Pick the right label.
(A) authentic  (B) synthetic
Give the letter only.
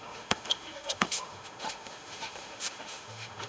B